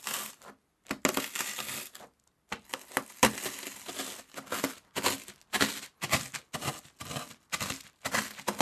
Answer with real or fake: real